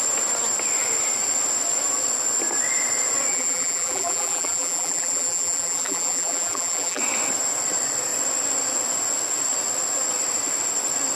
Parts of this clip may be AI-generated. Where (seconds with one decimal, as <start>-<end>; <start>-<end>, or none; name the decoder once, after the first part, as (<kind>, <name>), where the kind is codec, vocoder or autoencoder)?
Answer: 3.3-7.0 (vocoder, BigVGAN v2)